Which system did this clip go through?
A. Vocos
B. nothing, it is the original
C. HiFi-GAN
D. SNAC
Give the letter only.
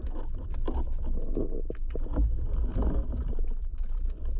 B